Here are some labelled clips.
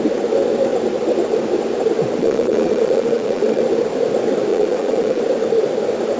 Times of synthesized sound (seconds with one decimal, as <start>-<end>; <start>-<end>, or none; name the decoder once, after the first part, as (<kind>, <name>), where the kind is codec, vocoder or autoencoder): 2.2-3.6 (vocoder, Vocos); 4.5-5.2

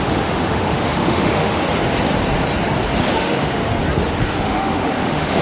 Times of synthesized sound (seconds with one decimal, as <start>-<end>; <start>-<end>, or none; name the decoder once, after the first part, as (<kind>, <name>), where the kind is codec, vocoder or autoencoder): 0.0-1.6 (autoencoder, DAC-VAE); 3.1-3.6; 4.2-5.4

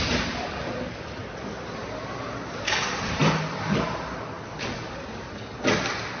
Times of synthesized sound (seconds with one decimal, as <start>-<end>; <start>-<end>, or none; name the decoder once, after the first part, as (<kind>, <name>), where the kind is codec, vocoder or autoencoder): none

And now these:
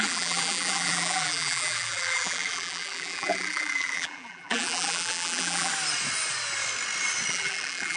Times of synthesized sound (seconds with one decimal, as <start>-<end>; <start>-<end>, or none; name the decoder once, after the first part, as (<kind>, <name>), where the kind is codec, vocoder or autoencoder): 0.0-5.7 (vocoder, BigVGAN v2); 7.3-8.0

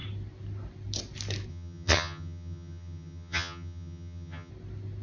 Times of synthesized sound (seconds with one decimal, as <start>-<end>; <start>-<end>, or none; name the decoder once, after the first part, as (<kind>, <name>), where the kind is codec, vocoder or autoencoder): 1.5-4.5 (vocoder, HiFi-GAN)